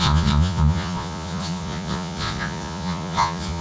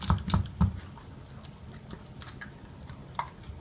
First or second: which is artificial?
first